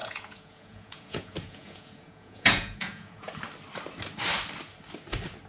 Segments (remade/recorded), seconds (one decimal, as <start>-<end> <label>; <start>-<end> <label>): 0.0-3.3 remade; 3.3-5.5 recorded